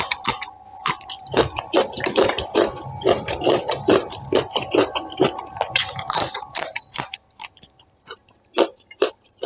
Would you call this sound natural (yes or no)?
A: no